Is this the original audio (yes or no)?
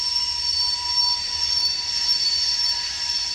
no